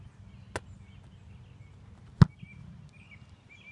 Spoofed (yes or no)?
no